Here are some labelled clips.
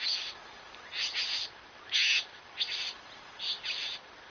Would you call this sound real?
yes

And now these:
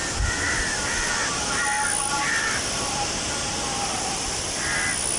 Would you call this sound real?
yes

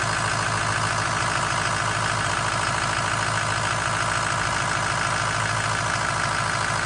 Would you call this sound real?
yes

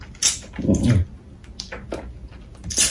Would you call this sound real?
yes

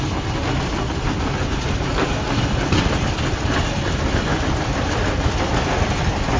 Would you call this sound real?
yes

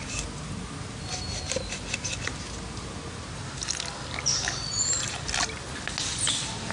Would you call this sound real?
yes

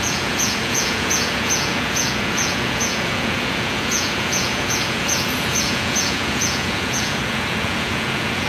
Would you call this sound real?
no